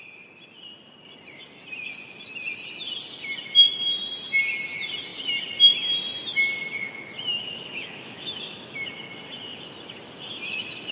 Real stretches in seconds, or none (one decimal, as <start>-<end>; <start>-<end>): 0.0-7.3; 8.7-10.9